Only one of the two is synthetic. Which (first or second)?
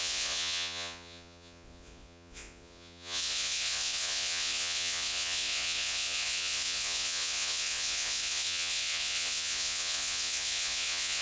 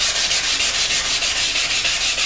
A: first